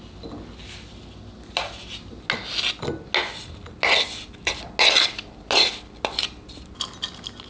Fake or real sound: real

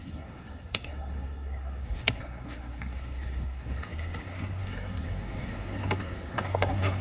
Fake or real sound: fake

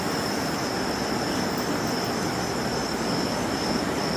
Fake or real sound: real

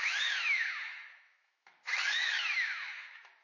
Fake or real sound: fake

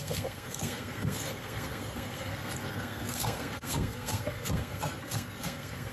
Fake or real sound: fake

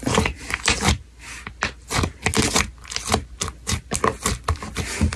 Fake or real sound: real